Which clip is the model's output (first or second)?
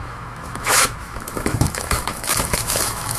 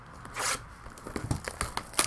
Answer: first